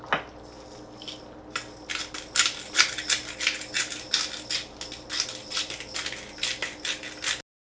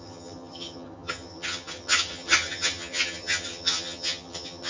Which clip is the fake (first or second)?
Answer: second